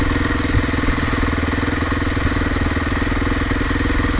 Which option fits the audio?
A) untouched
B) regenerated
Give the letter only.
A